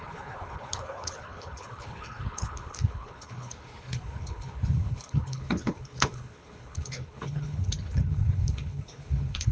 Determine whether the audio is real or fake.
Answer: fake